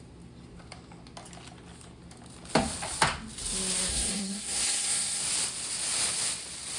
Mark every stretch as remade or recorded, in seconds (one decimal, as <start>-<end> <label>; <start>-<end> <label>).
0.0-3.9 recorded; 3.9-5.2 remade; 5.2-6.8 recorded